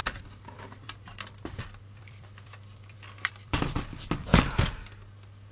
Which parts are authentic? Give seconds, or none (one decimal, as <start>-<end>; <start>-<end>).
4.3-5.5